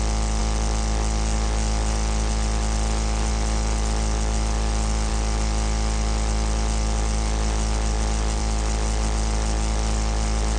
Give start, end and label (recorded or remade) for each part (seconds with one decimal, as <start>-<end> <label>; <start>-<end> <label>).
0.0-5.1 remade; 5.1-8.4 recorded; 8.4-10.6 remade